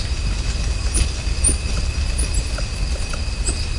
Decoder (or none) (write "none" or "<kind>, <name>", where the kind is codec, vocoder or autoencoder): none